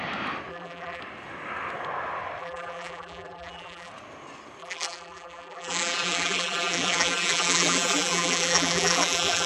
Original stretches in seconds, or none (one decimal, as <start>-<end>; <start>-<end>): 0.0-0.5; 1.0-2.4; 3.9-4.6